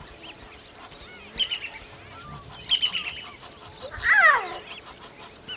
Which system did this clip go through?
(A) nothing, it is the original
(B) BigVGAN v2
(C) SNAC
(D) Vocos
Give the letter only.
A